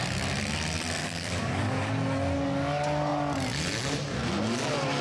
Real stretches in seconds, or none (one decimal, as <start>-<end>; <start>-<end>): 0.0-1.0; 1.9-5.0